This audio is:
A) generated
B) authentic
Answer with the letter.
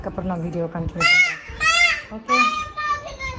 A